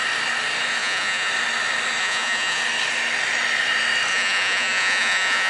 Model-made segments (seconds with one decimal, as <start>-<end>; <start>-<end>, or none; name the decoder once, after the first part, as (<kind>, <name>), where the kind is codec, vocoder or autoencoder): 0.8-1.3 (vocoder, Vocos); 2.0-2.6; 4.1-5.5